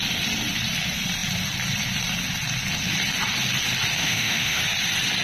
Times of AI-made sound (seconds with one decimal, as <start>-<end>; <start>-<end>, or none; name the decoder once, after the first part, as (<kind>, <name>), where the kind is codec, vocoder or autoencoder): 4.0-4.6 (autoencoder, DAC-VAE)